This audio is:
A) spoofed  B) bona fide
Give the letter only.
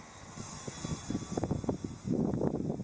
B